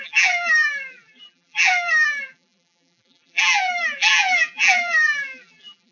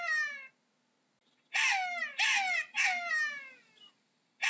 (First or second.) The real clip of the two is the second